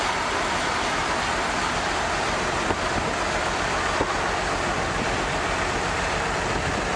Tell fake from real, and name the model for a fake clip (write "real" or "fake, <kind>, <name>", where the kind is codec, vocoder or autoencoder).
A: real